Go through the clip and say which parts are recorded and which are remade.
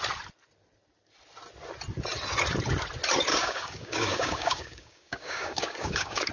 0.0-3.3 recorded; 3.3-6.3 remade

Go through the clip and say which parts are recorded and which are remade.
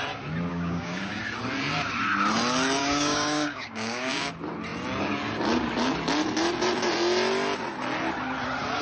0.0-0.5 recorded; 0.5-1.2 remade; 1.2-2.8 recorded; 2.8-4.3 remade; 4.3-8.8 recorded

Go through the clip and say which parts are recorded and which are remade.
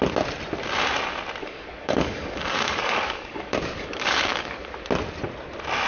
0.0-1.4 recorded; 1.4-4.7 remade; 4.7-5.9 recorded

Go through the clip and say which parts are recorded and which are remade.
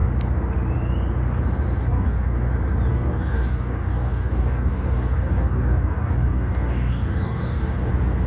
0.0-1.8 recorded; 1.8-2.5 remade; 2.5-2.9 recorded; 2.9-7.9 remade; 7.9-8.3 recorded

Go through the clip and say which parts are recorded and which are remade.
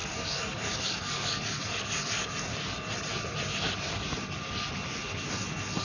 0.0-2.3 remade; 2.3-5.8 recorded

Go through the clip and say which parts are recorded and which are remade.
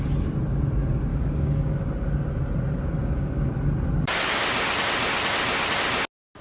0.0-1.1 recorded; 1.1-1.7 remade; 1.7-3.0 recorded; 3.0-3.5 remade; 3.5-6.4 recorded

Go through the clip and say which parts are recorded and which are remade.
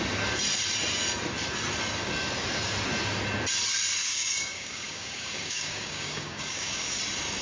0.0-4.0 recorded; 4.0-7.0 remade; 7.0-7.4 recorded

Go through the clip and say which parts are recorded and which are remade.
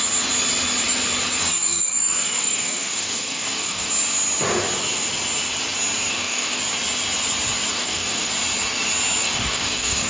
0.0-1.4 recorded; 1.4-3.9 remade; 3.9-6.1 recorded; 6.1-6.6 remade; 6.6-7.7 recorded; 7.7-8.3 remade; 8.3-9.2 recorded; 9.2-10.1 remade